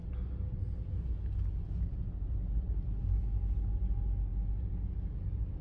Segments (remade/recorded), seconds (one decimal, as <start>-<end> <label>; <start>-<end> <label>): 0.0-5.6 recorded